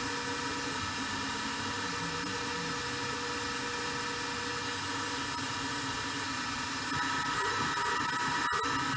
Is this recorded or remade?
recorded